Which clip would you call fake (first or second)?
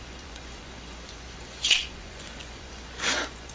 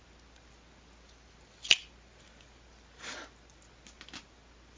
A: first